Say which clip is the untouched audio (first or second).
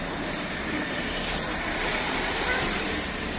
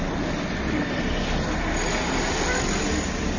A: second